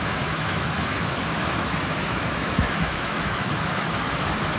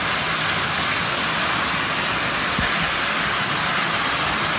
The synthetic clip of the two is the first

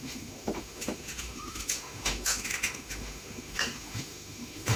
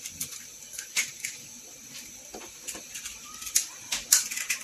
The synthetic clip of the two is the first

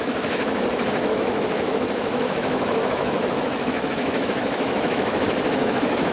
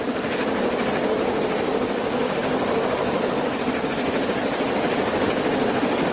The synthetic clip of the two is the first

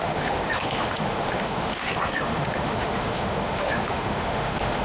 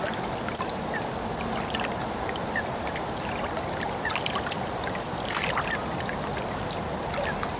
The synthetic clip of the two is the first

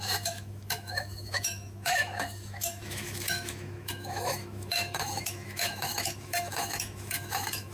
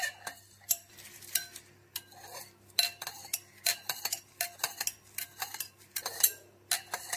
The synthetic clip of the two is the first